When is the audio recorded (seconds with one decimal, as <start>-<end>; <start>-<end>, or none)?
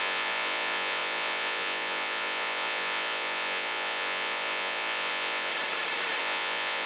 5.5-6.2